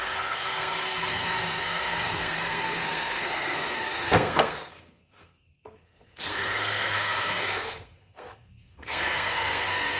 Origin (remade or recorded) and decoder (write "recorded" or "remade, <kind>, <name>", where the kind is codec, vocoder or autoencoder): remade, codec, SNAC